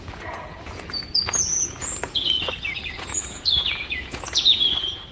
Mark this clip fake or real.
fake